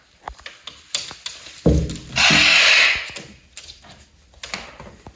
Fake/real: real